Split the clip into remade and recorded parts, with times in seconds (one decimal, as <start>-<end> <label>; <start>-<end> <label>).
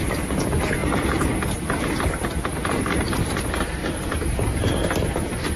0.0-0.8 remade; 0.8-3.2 recorded; 3.2-3.8 remade; 3.8-5.1 recorded; 5.1-5.6 remade